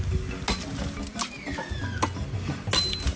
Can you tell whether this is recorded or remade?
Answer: recorded